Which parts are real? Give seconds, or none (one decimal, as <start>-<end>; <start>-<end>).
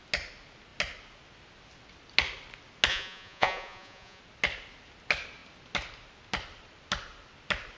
0.0-2.9; 4.2-7.8